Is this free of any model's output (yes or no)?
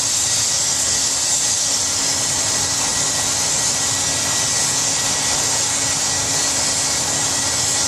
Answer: yes